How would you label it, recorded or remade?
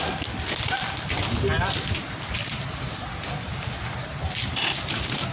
recorded